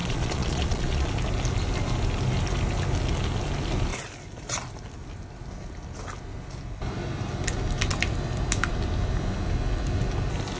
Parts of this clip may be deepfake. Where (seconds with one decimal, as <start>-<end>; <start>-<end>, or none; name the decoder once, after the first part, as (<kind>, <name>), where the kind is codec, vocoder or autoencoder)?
0.0-1.1 (vocoder, Vocos)